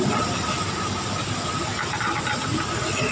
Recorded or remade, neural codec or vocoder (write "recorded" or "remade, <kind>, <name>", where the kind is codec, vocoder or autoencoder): recorded